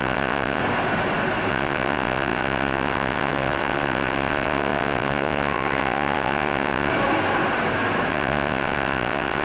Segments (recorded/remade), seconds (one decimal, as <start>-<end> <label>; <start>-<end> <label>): 0.0-0.6 remade; 0.6-1.5 recorded; 1.5-6.9 remade; 6.9-8.1 recorded; 8.1-9.4 remade